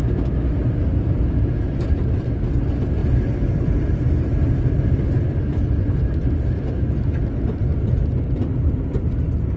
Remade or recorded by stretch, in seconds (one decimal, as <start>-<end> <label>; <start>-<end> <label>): 0.0-3.0 recorded; 3.0-4.3 remade; 4.3-9.6 recorded